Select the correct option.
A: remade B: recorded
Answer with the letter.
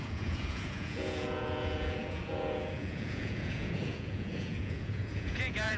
A